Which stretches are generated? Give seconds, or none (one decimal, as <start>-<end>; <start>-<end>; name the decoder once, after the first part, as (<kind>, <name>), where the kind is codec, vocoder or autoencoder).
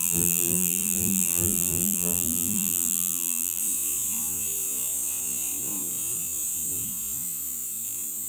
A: 0.0-3.6 (vocoder, BigVGAN v2)